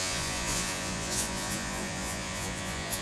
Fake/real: fake